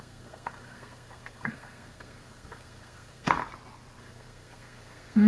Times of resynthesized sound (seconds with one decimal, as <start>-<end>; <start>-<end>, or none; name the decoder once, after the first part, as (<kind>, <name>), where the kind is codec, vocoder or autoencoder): 0.0-3.4 (codec, SNAC); 4.0-5.3